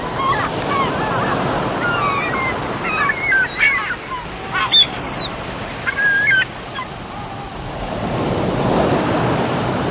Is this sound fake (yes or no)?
no